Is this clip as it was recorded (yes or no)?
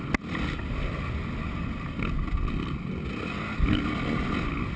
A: yes